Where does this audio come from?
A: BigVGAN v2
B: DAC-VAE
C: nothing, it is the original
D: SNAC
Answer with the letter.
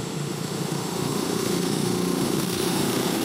B